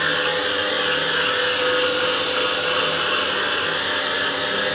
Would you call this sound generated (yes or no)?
no